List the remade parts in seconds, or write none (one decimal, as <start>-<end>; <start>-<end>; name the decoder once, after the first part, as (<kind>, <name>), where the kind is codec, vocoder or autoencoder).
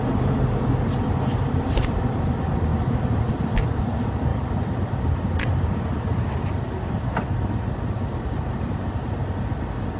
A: none